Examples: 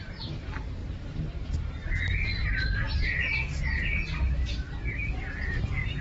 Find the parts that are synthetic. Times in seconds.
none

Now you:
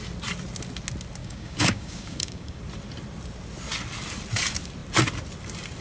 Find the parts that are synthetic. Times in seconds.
1.2-2.6 (codec, DAC)

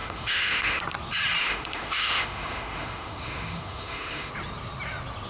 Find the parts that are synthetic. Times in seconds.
0.0-0.8 (autoencoder, DAC-VAE); 1.4-4.3

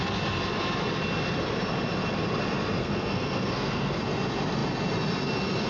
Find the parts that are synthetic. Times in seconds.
2.8-4.0 (codec, SNAC)